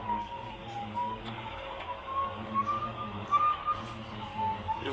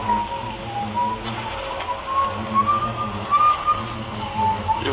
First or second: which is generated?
first